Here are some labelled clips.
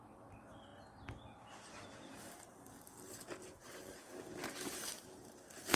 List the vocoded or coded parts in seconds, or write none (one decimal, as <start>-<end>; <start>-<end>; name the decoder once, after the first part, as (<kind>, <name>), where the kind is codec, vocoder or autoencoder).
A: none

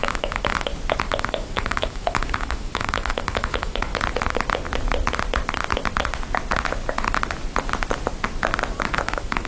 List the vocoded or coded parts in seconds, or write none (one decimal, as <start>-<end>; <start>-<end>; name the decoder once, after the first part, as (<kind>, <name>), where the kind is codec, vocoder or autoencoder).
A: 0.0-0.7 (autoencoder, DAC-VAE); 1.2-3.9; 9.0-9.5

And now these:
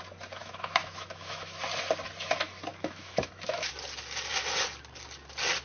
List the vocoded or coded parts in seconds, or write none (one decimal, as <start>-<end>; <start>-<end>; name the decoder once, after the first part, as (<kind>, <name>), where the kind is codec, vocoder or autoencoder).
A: 0.4-1.6 (autoencoder, DAC-VAE); 2.7-3.7